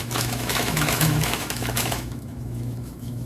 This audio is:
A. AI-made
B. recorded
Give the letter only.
A